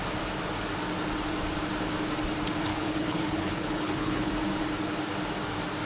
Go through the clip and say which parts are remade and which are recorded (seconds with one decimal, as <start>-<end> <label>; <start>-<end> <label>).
0.0-2.7 recorded; 2.7-4.3 remade; 4.3-5.9 recorded